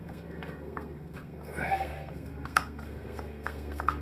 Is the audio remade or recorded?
remade